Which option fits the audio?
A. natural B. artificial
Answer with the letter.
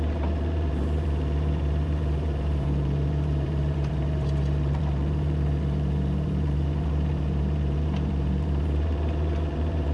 B